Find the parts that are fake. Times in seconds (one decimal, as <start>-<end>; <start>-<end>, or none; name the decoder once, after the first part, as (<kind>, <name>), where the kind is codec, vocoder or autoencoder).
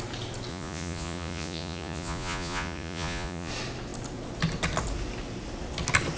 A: 0.5-3.5 (vocoder, Vocos)